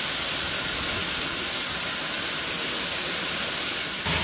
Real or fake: real